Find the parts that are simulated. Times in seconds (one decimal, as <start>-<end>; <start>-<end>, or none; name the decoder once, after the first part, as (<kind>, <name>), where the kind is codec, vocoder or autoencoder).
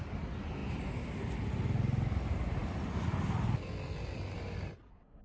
none